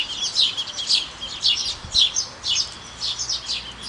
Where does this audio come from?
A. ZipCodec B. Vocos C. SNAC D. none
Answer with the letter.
D